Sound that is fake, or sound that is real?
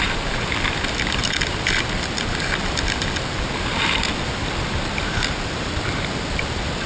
real